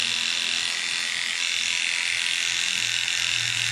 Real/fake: real